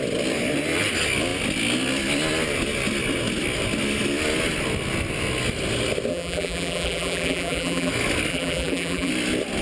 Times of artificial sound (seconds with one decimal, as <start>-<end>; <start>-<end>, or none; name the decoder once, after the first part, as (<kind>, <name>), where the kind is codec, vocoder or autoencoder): 6.1-7.9 (vocoder, BigVGAN v2); 8.3-9.1